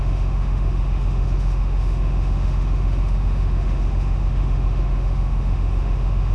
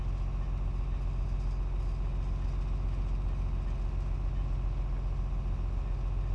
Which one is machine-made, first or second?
first